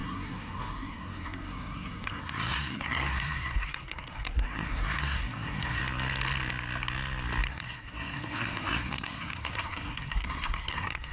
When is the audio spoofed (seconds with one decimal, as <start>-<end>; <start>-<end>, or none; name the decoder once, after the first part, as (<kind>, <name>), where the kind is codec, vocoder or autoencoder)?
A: 0.0-5.8 (codec, SNAC); 7.5-11.1